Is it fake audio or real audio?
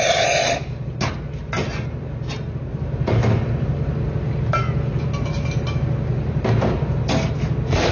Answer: real